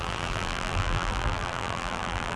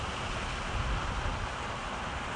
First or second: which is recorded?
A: second